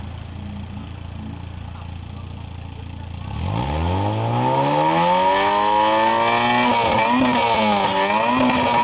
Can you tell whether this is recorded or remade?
recorded